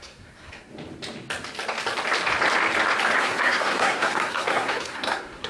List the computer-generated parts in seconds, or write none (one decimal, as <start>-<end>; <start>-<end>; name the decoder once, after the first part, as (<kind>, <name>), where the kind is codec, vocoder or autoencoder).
0.0-0.7 (codec, SNAC); 3.2-5.5